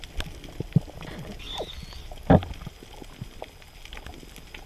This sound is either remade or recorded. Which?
recorded